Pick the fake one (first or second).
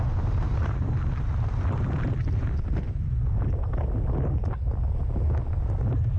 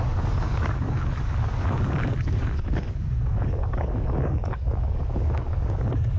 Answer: second